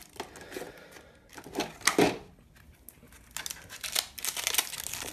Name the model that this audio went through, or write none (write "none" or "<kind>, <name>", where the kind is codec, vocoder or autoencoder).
none